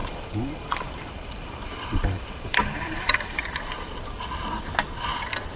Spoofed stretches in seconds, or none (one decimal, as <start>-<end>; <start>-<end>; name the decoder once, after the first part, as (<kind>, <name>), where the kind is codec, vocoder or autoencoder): 0.0-3.4 (vocoder, BigVGAN v2)